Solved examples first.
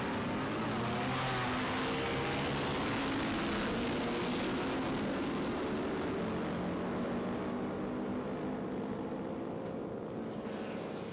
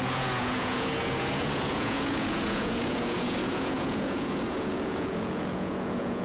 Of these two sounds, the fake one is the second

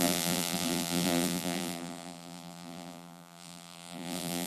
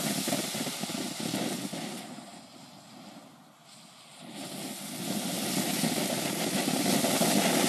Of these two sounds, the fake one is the first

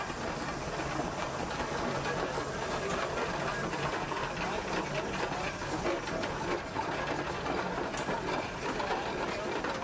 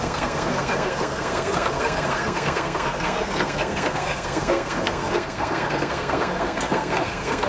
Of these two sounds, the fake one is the second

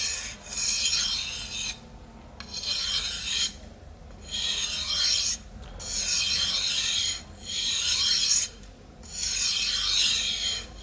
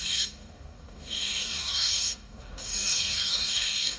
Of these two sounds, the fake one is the second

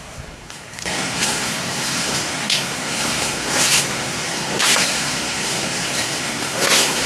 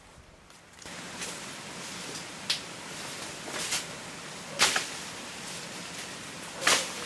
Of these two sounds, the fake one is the first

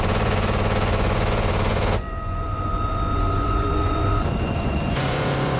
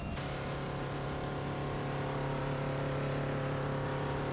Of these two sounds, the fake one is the first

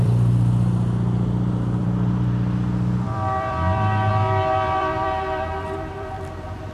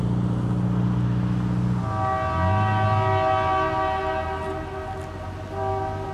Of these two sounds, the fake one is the first